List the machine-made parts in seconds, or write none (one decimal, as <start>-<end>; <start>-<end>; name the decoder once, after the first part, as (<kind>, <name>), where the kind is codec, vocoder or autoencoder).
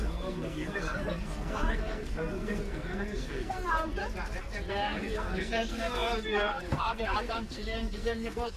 0.0-4.0 (codec, SNAC); 4.7-8.6